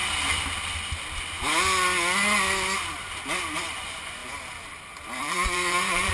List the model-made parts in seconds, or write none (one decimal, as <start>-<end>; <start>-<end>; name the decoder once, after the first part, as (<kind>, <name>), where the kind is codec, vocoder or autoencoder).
3.7-4.2 (vocoder, Vocos); 5.2-6.1